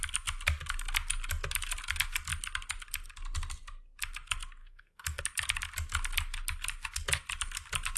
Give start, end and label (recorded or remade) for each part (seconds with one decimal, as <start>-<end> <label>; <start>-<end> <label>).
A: 0.0-4.6 recorded; 4.6-5.2 remade; 5.2-8.0 recorded